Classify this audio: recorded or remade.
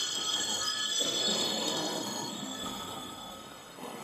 remade